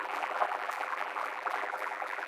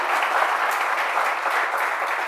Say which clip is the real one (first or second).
second